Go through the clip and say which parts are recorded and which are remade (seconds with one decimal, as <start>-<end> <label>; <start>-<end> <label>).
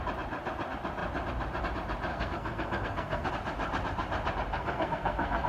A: 0.0-2.1 recorded; 2.1-3.3 remade; 3.3-4.5 recorded; 4.5-5.5 remade